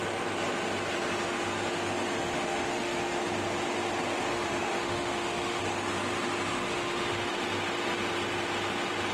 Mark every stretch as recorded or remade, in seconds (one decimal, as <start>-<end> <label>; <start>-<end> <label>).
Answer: 0.0-2.2 recorded; 2.2-3.2 remade; 3.2-4.3 recorded; 4.3-5.6 remade; 5.6-6.5 recorded; 6.5-7.3 remade; 7.3-9.1 recorded